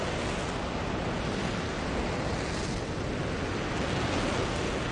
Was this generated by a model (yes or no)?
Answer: no